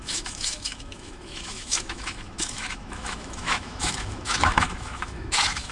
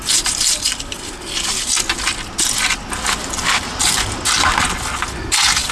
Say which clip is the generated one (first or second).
first